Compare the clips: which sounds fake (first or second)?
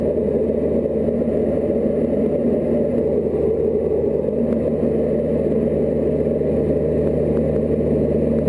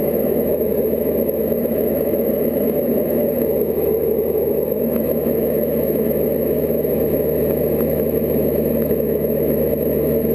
second